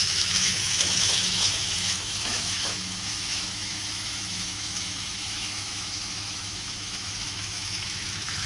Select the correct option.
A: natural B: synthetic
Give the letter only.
B